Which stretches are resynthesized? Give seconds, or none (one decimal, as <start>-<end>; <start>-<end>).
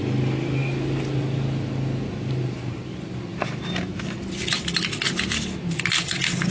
none